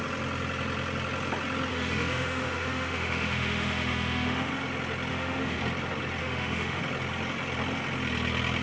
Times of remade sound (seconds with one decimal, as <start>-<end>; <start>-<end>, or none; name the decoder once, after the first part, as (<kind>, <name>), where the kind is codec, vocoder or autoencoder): 1.7-4.5 (autoencoder, DAC-VAE); 5.1-5.6; 6.2-6.8